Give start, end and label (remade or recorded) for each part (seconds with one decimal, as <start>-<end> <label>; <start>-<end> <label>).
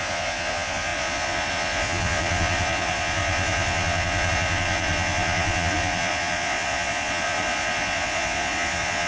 0.0-9.1 remade